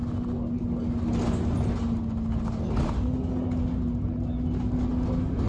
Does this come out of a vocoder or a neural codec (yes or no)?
no